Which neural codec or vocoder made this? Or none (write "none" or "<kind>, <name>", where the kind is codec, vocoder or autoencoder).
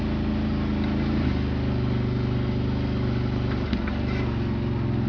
none